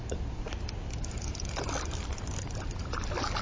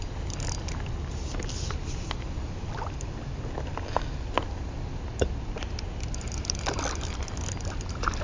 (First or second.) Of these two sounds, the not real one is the first